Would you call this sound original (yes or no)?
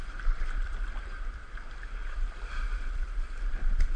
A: no